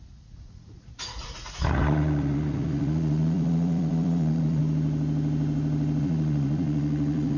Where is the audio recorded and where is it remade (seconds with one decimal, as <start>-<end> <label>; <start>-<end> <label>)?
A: 0.0-4.6 remade; 4.6-6.0 recorded; 6.0-7.4 remade